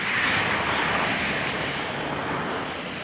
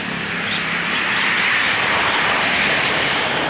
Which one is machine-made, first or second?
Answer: second